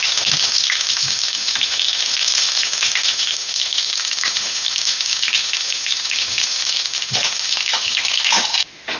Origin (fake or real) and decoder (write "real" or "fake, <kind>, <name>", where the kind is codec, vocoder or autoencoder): fake, autoencoder, DAC-VAE